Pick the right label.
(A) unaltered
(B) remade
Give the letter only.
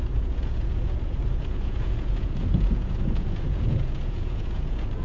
B